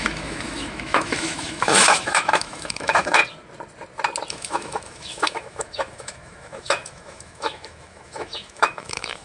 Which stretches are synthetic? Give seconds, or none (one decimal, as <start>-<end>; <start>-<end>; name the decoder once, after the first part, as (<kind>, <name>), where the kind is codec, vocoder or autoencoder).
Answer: 0.0-3.2 (autoencoder, DAC-VAE); 4.3-9.2